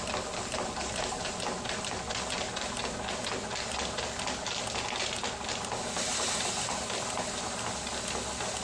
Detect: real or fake real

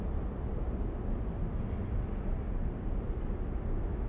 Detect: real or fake real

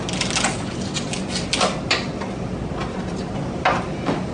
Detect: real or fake real